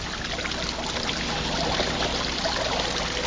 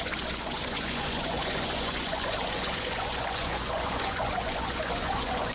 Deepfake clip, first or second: second